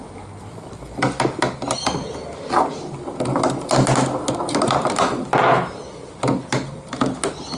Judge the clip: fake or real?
real